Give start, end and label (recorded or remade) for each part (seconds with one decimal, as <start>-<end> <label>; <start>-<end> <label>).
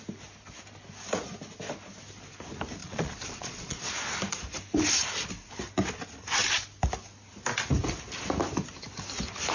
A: 0.0-2.8 recorded; 2.8-3.9 remade; 3.9-9.5 recorded